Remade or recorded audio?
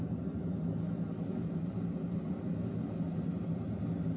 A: recorded